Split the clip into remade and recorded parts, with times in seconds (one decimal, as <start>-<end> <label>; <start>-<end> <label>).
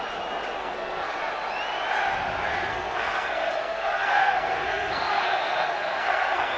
0.0-0.6 recorded; 0.6-1.2 remade; 1.2-2.7 recorded; 2.7-6.6 remade